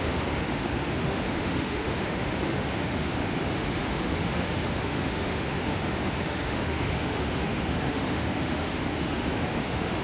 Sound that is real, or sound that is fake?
fake